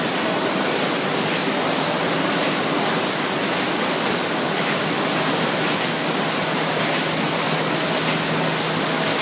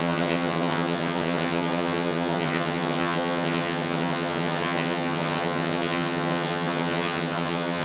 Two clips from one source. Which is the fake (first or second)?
second